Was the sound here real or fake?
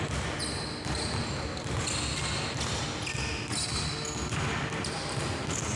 real